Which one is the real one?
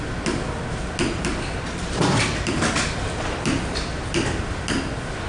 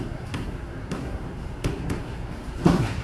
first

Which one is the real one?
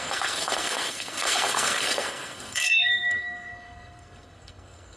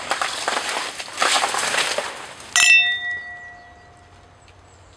second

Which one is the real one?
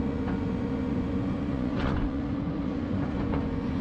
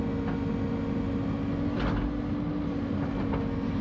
second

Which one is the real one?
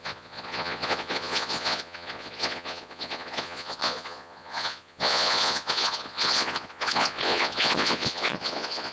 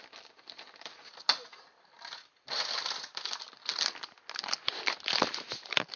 second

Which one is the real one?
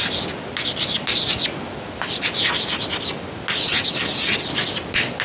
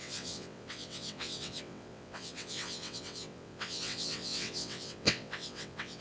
first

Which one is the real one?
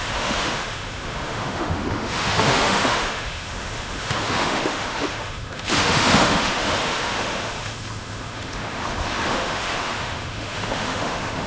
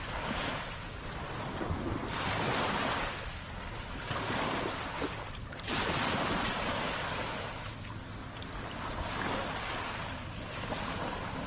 second